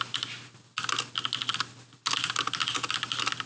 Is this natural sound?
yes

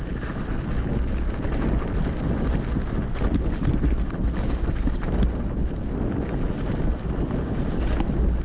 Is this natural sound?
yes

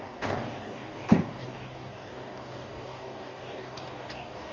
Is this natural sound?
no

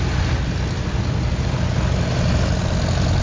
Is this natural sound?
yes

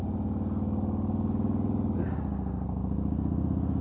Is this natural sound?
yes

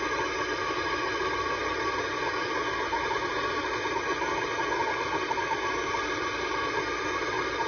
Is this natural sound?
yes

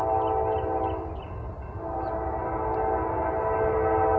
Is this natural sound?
yes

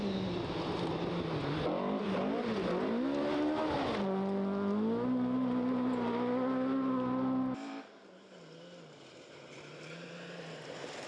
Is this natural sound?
yes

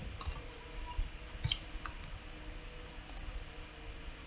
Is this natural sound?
yes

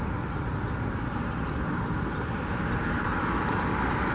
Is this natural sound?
yes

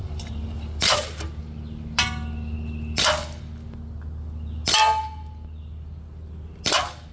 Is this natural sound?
yes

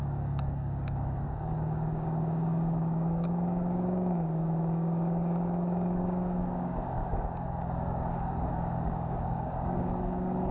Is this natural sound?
no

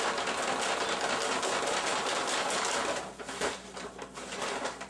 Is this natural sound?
yes